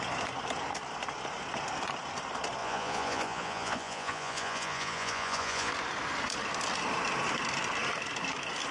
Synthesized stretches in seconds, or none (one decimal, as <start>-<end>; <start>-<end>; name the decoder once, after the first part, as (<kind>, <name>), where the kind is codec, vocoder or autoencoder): 2.6-5.7 (vocoder, Vocos)